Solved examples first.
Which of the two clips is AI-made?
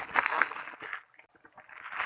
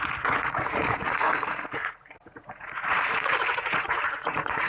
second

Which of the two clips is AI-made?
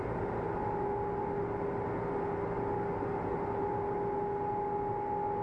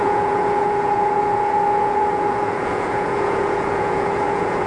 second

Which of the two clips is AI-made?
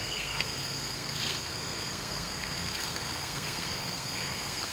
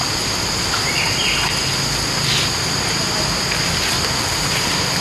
first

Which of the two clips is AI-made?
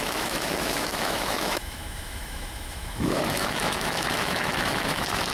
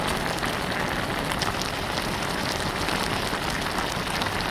first